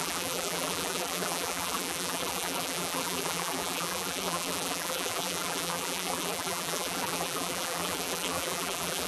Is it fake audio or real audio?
fake